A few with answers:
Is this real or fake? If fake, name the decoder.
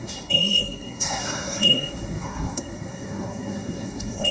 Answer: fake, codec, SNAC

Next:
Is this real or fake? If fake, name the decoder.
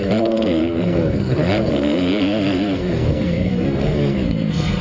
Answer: fake, codec, SNAC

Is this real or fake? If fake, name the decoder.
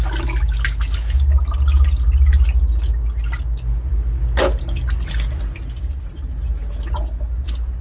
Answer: real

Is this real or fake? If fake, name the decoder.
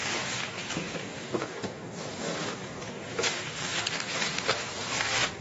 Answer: fake, codec, DAC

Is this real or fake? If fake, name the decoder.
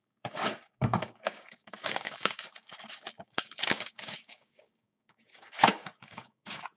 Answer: fake, codec, DAC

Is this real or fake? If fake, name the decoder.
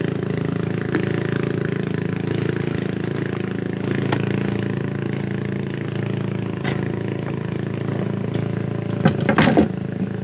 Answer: real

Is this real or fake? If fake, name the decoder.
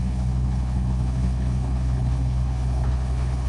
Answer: fake, codec, HILCodec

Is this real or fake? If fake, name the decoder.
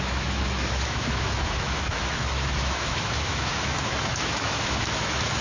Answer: fake, autoencoder, DAC-VAE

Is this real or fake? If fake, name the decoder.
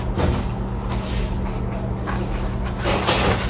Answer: real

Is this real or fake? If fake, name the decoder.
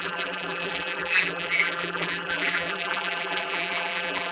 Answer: fake, vocoder, BigVGAN v2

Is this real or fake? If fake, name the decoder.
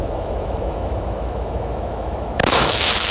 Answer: fake, autoencoder, DAC-VAE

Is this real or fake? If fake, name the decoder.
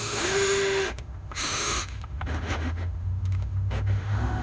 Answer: fake, autoencoder, DAC-VAE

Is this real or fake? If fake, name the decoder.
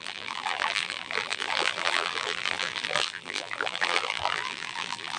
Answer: fake, vocoder, BigVGAN v2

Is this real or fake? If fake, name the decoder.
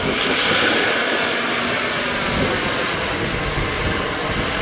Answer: real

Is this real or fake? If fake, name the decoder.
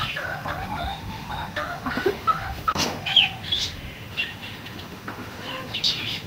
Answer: fake, autoencoder, DAC-VAE